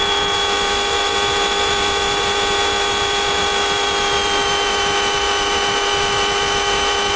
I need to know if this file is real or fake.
real